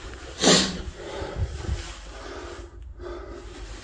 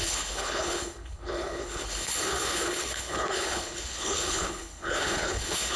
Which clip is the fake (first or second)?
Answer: second